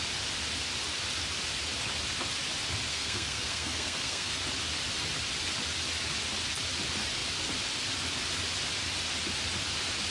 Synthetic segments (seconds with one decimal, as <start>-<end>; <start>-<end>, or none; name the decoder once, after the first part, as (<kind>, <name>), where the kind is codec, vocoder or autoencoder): 2.9-4.4 (codec, SNAC)